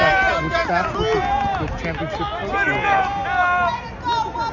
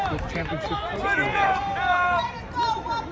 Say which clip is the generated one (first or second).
second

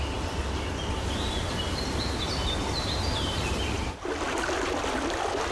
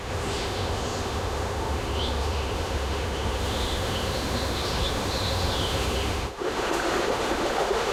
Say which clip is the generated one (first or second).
second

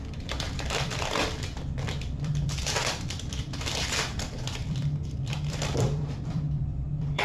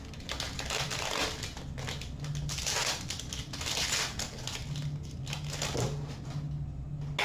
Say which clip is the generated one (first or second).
first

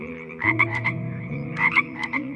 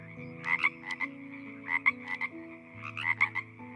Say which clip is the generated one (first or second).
first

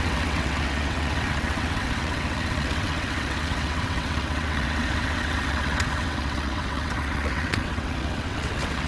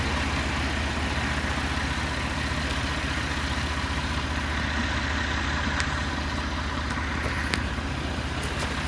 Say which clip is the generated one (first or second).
first